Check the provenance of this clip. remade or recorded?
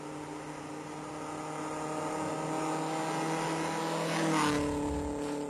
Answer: recorded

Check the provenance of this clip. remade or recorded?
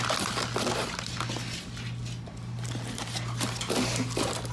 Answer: recorded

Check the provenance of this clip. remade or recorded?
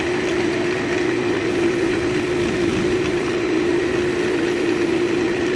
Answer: remade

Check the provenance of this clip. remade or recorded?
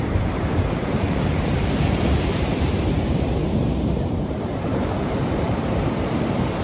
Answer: remade